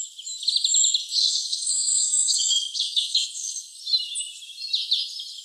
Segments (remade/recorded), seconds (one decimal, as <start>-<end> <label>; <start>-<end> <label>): 0.0-1.2 recorded; 1.2-3.8 remade; 3.8-5.4 recorded